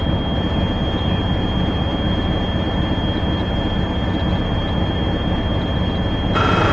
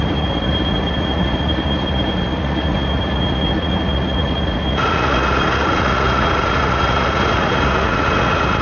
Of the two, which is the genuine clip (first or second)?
first